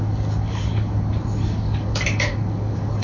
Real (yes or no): no